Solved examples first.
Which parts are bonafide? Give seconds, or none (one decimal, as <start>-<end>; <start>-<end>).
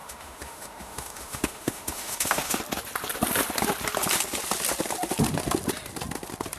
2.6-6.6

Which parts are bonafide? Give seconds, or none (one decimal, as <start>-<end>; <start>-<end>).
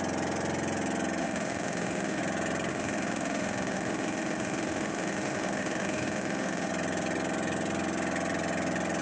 0.0-1.2; 2.2-2.7; 6.7-9.0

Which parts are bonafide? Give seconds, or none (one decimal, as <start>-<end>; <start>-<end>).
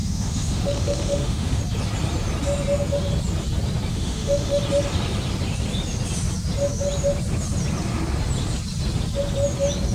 1.6-3.9; 4.6-9.9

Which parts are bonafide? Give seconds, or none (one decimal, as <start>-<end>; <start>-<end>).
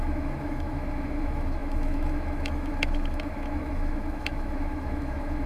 none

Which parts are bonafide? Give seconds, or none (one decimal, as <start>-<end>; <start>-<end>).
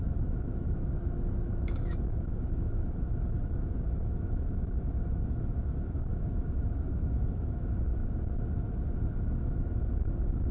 8.0-9.3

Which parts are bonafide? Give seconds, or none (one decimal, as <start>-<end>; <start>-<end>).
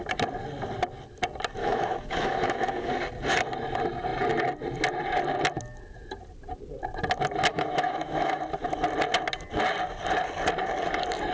0.0-1.6; 2.9-7.5; 8.4-11.3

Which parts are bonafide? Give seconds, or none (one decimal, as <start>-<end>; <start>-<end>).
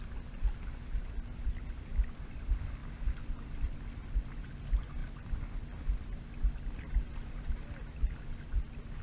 0.0-9.0